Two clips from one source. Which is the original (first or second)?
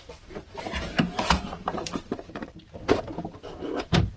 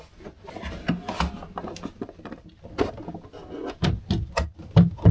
second